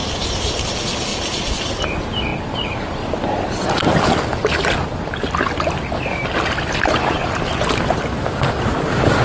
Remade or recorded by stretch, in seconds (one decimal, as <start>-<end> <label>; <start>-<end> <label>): 0.0-0.7 remade; 0.7-1.1 recorded; 1.1-1.8 remade; 1.8-9.2 recorded